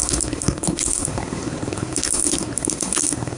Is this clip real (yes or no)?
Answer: no